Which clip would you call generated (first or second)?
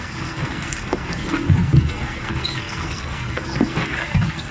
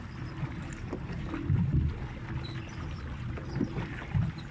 first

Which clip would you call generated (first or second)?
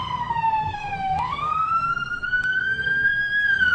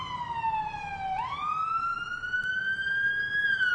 first